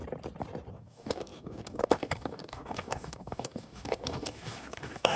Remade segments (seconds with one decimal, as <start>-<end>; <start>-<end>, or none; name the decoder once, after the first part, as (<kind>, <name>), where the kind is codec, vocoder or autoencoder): 0.7-5.2 (codec, DAC)